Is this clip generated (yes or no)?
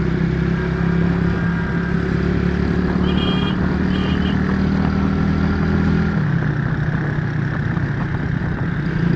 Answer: no